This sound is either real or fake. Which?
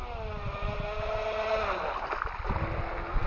real